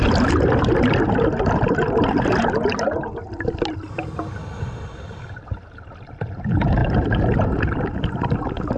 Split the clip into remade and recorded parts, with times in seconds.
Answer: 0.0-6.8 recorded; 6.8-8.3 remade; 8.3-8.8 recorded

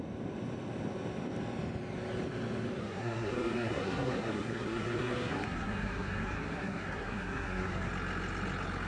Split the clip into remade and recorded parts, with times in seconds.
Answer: 0.0-2.8 recorded; 2.8-7.9 remade; 7.9-8.9 recorded